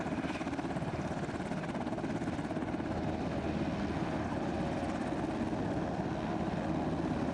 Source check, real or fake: real